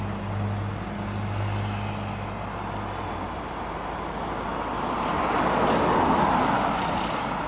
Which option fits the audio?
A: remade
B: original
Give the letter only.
B